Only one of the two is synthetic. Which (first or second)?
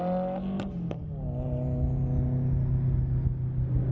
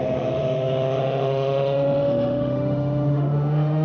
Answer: second